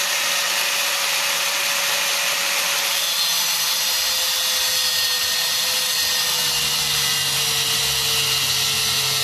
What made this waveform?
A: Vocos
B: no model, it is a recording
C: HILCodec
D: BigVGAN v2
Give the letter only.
B